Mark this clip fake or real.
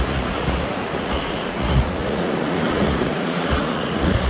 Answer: fake